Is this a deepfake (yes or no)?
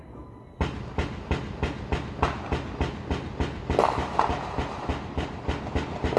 no